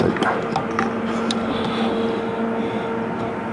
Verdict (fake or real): real